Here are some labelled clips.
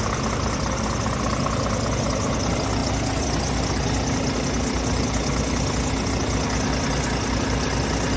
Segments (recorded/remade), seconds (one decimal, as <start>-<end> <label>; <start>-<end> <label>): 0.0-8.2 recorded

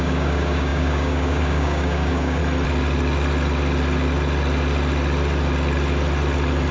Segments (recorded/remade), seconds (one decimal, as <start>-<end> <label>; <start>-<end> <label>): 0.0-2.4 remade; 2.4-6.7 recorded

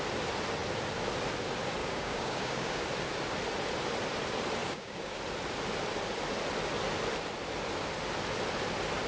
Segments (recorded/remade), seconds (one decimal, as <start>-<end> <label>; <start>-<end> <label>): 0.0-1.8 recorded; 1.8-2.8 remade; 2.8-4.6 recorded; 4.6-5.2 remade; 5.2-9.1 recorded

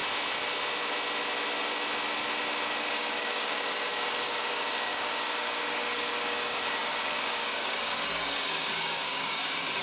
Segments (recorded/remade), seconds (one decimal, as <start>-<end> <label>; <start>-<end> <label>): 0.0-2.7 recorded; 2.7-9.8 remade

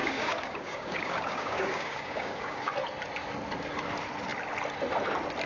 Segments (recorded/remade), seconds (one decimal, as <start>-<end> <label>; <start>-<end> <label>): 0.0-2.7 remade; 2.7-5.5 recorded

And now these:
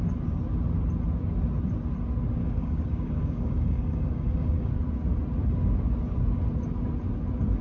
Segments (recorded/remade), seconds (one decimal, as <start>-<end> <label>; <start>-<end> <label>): 0.0-2.4 recorded; 2.4-4.7 remade; 4.7-7.6 recorded

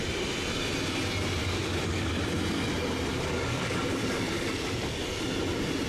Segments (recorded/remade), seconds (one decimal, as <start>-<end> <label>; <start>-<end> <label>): 0.0-1.4 recorded; 1.4-2.1 remade; 2.1-3.1 recorded; 3.1-5.2 remade; 5.2-5.9 recorded